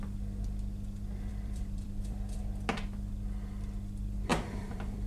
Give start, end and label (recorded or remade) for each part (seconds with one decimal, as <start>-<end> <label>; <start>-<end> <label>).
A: 0.0-1.3 recorded; 1.3-2.4 remade; 2.4-4.3 recorded; 4.3-5.1 remade